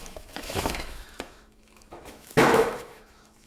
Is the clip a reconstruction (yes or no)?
yes